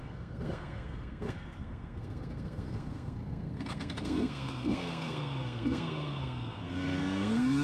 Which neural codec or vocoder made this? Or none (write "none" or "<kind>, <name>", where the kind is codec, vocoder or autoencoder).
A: codec, SNAC